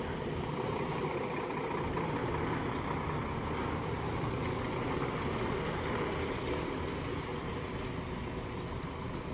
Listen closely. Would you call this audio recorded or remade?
recorded